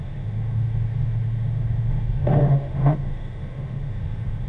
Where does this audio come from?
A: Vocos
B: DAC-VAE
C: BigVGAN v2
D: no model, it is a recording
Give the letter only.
B